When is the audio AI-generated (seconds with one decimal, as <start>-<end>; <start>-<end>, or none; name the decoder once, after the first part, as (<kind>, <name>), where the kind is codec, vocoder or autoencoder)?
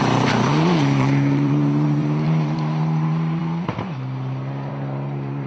0.0-3.4 (vocoder, BigVGAN v2); 4.7-5.5